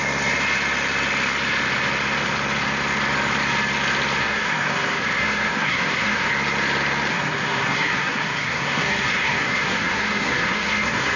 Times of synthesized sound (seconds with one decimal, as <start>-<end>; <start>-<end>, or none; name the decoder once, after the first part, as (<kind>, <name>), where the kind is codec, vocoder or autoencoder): 4.2-6.3 (codec, SNAC); 7.1-11.2